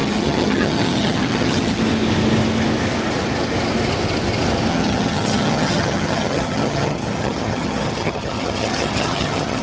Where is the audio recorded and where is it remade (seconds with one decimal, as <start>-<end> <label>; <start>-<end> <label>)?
0.0-1.8 remade; 1.8-4.7 recorded; 4.7-9.6 remade